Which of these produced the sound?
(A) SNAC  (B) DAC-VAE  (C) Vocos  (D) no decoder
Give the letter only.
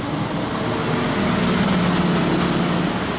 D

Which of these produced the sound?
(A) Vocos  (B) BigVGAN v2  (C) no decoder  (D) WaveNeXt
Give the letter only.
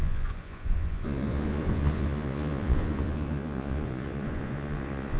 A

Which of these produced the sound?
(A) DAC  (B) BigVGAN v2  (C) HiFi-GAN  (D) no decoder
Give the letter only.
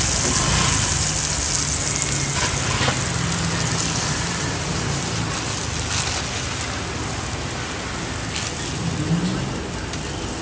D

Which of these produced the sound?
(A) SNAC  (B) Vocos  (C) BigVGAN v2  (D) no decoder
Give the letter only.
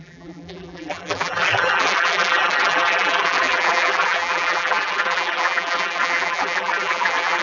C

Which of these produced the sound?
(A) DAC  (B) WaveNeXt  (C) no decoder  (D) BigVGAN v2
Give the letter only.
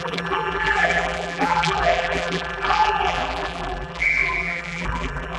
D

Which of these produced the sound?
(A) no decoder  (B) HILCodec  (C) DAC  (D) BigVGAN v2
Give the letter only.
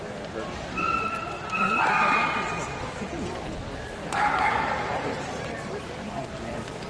D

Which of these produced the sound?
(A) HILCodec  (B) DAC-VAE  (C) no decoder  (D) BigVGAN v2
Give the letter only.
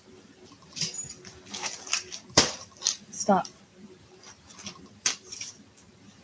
D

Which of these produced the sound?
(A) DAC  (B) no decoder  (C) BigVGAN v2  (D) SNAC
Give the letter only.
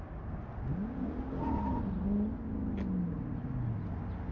B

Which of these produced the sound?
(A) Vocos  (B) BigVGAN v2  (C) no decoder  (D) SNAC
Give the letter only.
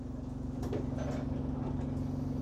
C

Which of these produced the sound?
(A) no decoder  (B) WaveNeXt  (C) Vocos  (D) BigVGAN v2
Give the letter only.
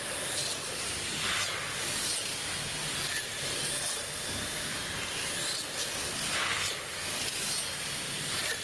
A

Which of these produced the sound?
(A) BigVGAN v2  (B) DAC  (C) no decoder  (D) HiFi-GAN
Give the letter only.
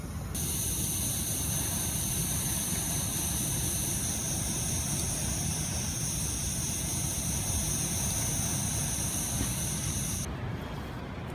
C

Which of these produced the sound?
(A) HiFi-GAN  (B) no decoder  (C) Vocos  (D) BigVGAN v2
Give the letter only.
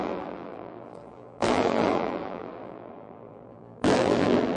D